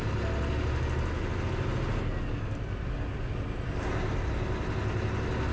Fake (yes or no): no